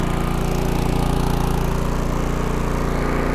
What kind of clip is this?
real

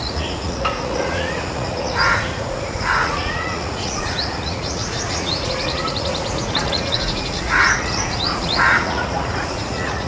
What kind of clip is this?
fake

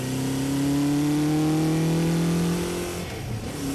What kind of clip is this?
real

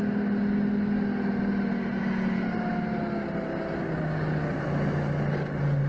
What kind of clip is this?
real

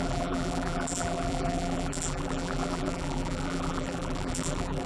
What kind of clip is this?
fake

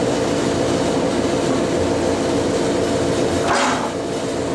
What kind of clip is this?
real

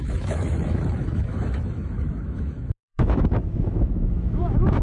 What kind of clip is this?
fake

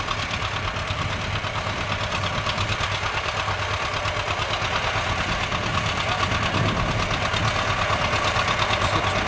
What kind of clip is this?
real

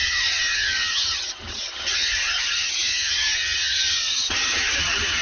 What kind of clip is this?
fake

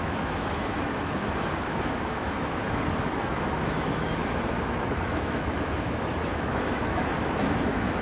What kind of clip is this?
fake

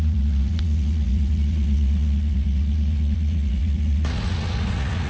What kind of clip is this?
fake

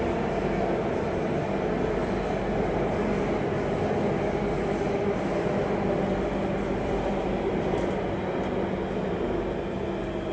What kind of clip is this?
real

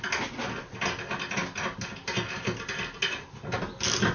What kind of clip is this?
real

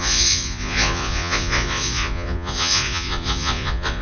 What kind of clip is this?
fake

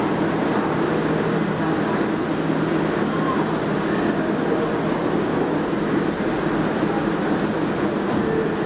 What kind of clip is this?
real